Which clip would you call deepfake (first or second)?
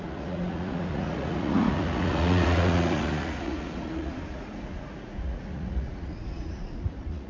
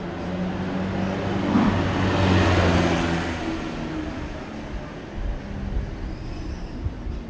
first